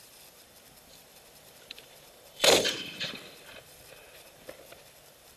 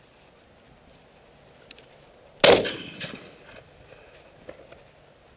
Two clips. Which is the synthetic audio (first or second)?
first